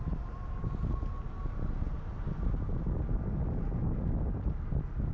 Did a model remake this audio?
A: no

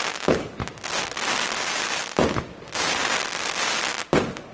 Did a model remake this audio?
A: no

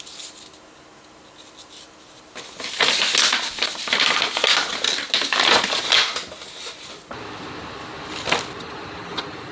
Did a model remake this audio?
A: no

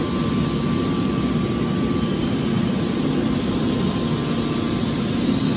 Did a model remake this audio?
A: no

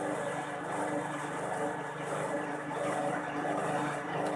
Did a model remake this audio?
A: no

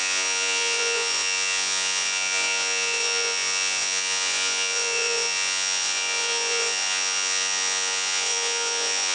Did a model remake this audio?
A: yes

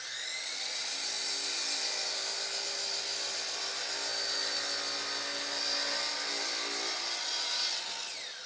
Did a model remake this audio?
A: no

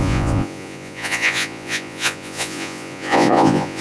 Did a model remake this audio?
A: yes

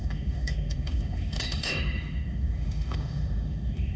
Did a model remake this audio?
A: yes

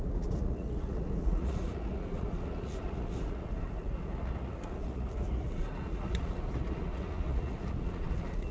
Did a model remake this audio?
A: yes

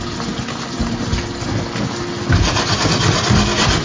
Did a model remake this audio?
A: no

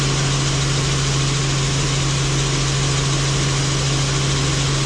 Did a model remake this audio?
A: no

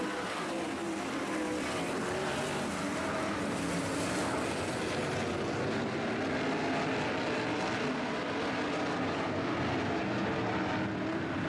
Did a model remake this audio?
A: no